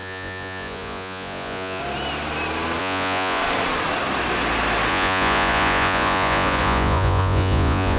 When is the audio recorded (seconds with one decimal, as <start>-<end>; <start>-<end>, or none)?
1.8-2.8; 3.4-4.9